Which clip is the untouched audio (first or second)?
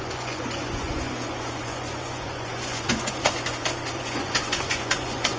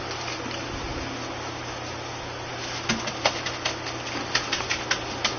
second